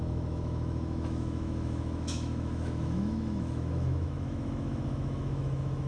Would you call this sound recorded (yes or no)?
no